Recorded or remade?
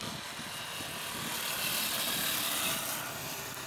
recorded